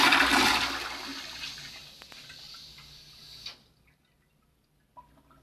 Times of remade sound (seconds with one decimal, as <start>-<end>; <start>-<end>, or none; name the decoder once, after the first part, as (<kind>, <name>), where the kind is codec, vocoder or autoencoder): none